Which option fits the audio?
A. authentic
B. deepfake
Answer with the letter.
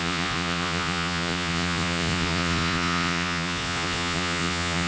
B